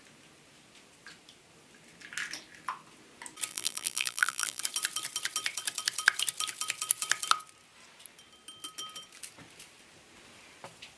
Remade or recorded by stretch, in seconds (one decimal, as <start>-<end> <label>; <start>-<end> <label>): 0.0-3.5 recorded; 3.5-4.6 remade; 4.6-11.0 recorded